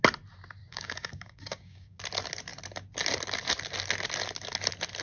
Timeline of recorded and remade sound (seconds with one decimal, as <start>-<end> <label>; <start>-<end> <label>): 0.0-0.6 recorded; 0.6-2.0 remade; 2.0-5.0 recorded